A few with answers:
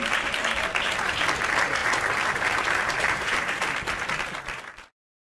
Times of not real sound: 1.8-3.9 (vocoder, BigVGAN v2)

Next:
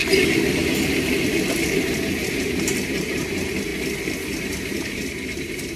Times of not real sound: 2.1-3.7 (vocoder, BigVGAN v2); 4.4-5.8

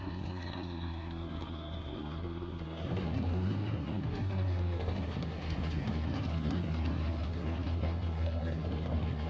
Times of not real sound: 0.0-9.3 (codec, SNAC)

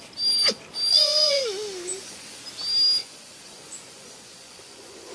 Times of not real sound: 0.9-1.4 (vocoder, Vocos); 1.9-2.4; 3.0-5.1

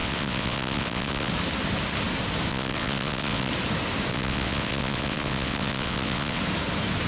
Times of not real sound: 0.0-1.3 (vocoder, WaveNeXt); 2.5-3.5; 4.1-6.4

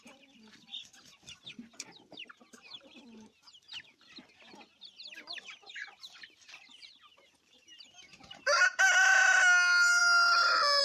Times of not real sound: 7.1-8.8 (vocoder, BigVGAN v2)